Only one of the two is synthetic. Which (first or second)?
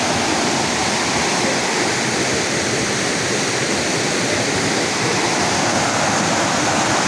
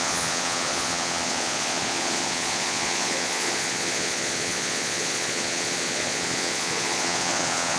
second